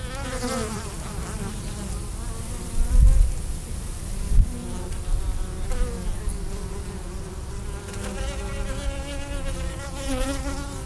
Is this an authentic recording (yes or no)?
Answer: yes